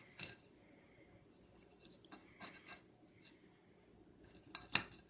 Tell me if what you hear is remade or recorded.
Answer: recorded